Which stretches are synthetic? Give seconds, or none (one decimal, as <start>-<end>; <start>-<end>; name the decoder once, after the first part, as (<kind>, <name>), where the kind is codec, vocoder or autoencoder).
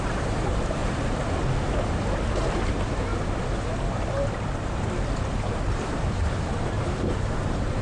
0.0-0.8 (vocoder, BigVGAN v2); 2.6-3.1; 5.5-7.8